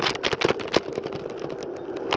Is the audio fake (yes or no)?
no